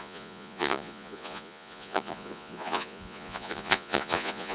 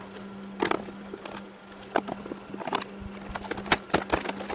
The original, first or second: second